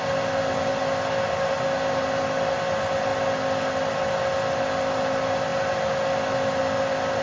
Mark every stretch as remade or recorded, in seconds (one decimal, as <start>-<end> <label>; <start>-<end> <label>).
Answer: 0.0-7.2 recorded